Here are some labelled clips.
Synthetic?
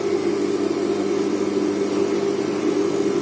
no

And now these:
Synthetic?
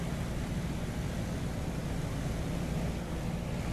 no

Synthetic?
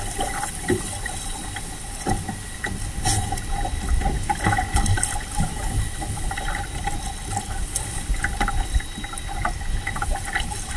no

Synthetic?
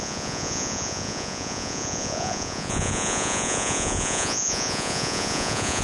yes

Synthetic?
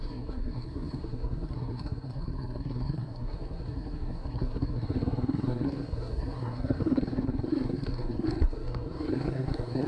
yes